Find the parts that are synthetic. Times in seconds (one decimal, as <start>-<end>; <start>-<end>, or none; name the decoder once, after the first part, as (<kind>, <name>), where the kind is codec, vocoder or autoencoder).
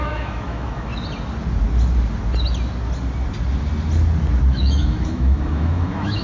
0.0-0.9 (autoencoder, DAC-VAE); 4.5-6.2